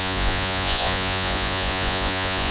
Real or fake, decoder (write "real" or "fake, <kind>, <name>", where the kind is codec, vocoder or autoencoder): fake, vocoder, Vocos